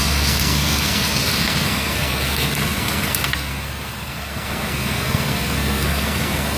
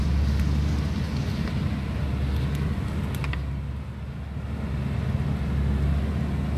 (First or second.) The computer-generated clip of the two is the first